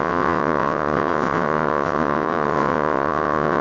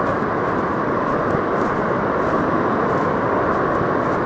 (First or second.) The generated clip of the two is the first